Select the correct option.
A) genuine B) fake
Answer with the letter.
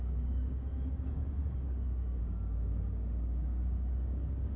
B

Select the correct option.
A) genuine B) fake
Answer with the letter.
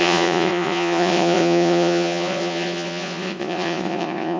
B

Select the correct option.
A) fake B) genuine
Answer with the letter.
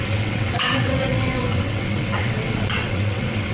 A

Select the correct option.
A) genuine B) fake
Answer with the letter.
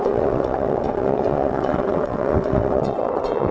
B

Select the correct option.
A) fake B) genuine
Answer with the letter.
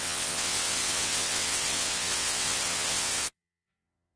A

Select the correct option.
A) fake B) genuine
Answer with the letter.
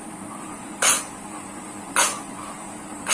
A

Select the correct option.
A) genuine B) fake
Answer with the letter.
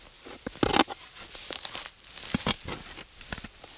A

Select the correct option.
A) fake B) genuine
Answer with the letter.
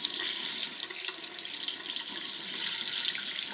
B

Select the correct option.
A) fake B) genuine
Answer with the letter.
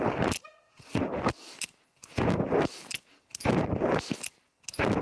B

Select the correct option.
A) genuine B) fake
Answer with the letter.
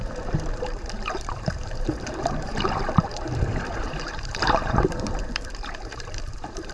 B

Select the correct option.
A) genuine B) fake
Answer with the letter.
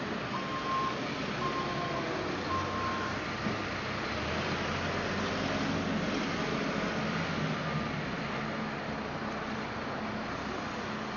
A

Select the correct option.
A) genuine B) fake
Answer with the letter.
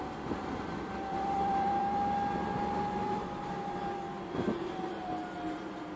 B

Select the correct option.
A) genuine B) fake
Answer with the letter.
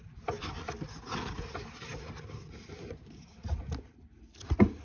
A